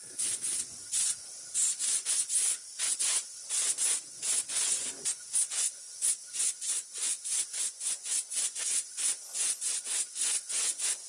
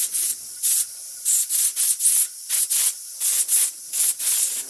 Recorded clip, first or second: second